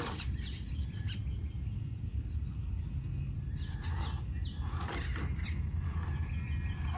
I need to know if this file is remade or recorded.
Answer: recorded